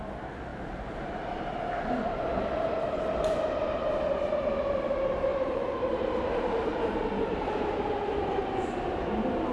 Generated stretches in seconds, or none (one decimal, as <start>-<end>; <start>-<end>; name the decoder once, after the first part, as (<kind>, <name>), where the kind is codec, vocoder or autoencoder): 0.5-1.5 (vocoder, BigVGAN v2); 5.3-9.1